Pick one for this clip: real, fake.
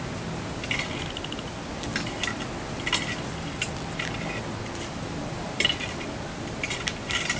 real